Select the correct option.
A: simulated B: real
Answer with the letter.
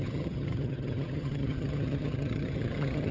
A